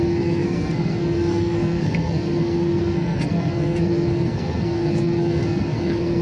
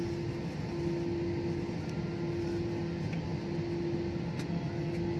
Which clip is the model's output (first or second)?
first